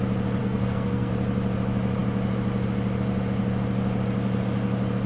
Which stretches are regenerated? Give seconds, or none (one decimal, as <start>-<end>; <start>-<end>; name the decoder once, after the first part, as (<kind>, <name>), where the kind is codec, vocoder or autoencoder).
0.4-1.1 (codec, SNAC)